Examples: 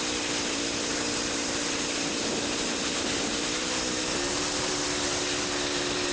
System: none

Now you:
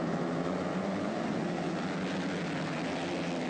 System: none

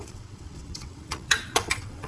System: vocoder, WaveNeXt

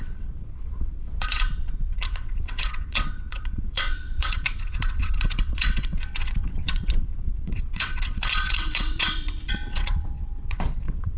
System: vocoder, WaveNeXt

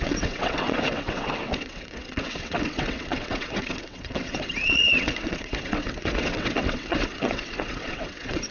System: vocoder, WaveNeXt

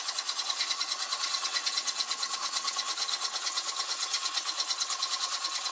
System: vocoder, WaveNeXt